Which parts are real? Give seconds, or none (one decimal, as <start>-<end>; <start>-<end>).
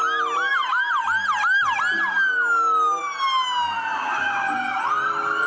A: 0.0-5.5